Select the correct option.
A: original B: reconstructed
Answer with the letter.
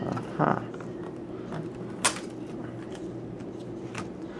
A